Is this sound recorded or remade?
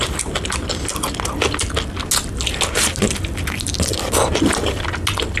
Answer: recorded